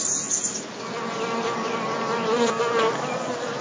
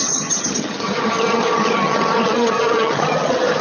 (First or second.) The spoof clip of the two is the second